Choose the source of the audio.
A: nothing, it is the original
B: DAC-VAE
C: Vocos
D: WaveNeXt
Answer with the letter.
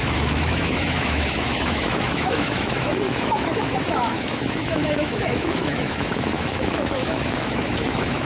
B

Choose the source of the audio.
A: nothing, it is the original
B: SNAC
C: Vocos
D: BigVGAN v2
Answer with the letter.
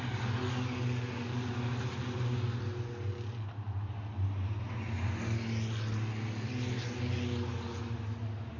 A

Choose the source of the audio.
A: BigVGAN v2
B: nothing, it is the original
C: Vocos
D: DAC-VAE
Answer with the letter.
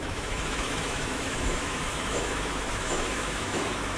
D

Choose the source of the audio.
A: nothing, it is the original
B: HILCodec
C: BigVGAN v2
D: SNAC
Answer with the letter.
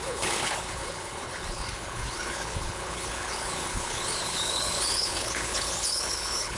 B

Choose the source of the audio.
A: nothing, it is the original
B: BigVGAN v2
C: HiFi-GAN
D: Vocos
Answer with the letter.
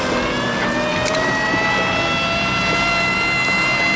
A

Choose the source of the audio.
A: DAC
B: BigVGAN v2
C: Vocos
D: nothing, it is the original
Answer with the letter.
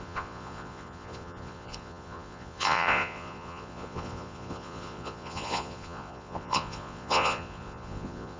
C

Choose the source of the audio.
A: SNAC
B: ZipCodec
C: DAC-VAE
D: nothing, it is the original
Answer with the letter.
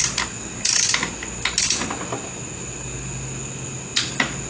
D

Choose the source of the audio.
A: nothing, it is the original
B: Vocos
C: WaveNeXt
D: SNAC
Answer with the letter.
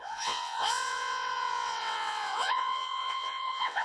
C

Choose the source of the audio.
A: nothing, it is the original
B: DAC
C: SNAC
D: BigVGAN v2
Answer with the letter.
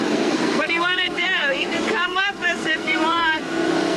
C